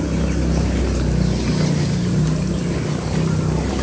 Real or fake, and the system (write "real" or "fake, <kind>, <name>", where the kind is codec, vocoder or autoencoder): real